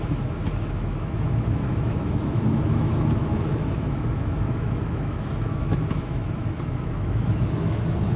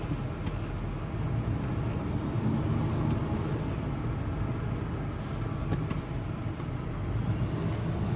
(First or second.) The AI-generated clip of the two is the first